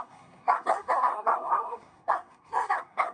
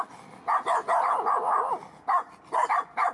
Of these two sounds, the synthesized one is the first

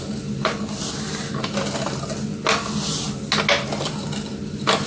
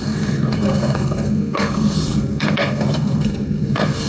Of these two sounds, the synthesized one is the second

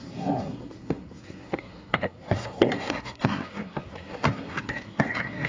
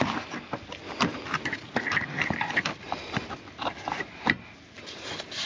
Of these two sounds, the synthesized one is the first